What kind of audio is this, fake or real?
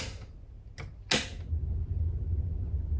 real